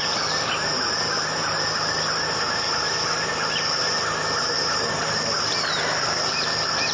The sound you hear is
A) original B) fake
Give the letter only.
A